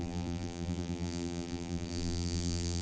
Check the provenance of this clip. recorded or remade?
remade